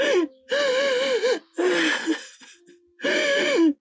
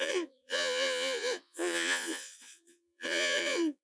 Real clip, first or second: first